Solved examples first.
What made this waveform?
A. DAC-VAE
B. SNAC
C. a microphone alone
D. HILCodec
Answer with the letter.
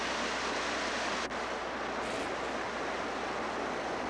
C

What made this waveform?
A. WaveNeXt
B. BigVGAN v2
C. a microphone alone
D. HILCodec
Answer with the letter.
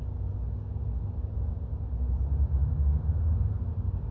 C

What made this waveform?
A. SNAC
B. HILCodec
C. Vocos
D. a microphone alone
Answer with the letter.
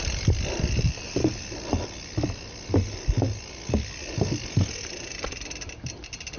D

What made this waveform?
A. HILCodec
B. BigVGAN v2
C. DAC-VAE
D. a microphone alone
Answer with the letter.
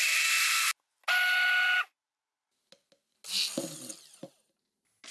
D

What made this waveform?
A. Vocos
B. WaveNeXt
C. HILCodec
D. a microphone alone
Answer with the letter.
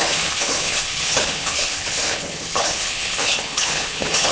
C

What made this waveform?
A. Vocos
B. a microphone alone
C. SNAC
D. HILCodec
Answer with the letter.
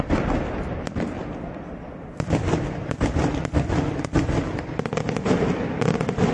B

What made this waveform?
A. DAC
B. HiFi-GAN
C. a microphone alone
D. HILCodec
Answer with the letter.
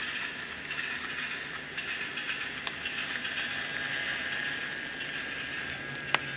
C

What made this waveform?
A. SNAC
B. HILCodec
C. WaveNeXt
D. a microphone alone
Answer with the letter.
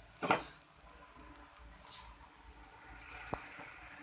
D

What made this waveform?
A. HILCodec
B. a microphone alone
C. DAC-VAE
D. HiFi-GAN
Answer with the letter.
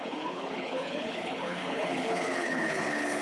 A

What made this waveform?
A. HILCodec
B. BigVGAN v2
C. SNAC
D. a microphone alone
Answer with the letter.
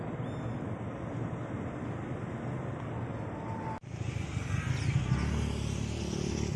D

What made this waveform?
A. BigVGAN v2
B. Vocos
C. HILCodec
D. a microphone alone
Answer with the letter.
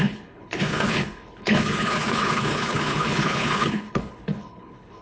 C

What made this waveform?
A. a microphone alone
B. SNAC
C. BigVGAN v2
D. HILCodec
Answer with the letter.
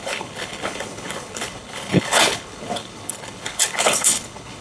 D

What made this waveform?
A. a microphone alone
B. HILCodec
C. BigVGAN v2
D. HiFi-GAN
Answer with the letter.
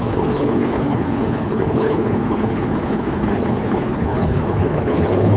B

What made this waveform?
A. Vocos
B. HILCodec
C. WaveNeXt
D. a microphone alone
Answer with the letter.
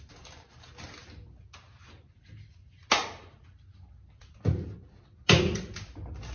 D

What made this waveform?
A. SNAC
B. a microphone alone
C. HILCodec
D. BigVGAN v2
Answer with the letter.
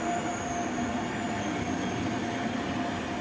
B